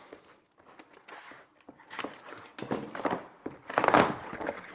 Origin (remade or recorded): recorded